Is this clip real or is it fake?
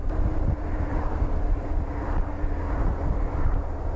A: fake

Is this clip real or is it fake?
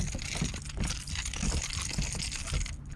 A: real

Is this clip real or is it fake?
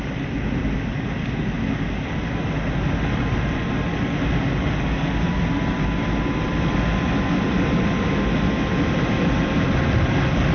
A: real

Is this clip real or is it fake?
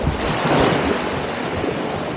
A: real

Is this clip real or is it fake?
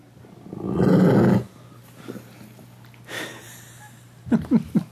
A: real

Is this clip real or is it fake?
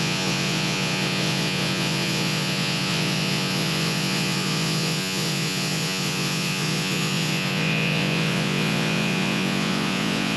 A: fake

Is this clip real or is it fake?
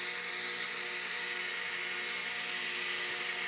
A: real